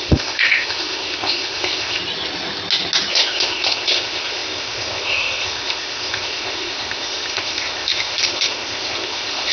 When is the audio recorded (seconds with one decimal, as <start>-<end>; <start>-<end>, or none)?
2.0-3.1